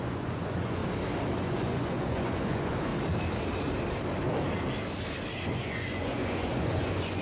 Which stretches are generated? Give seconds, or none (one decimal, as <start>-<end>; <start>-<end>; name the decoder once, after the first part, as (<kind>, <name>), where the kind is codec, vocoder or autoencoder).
0.0-0.8 (vocoder, Vocos); 1.4-2.9; 5.5-7.2